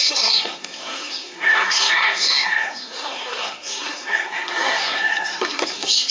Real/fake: fake